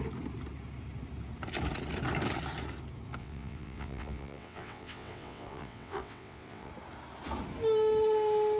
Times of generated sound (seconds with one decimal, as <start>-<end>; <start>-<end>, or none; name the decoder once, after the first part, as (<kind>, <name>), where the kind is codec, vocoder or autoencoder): 3.2-6.7 (vocoder, WaveNeXt)